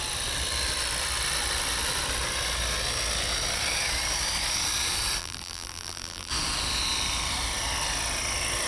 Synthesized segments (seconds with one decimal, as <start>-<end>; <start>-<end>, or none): 5.2-6.3